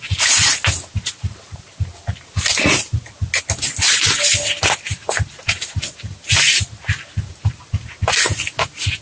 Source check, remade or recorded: recorded